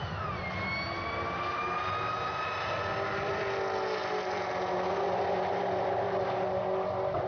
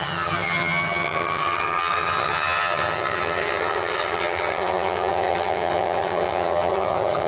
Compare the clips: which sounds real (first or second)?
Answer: first